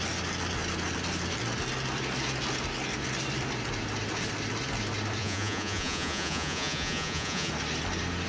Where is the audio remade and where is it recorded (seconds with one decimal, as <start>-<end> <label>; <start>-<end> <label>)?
0.0-5.2 recorded; 5.2-7.5 remade; 7.5-8.3 recorded